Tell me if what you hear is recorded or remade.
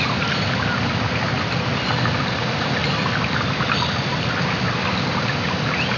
recorded